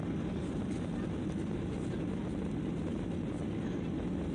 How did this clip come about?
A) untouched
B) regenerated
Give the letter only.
A